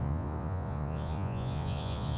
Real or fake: fake